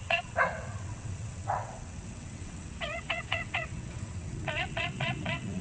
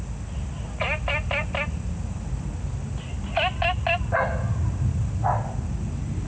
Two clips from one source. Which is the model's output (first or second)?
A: first